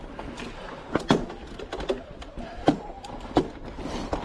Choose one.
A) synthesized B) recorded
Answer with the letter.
B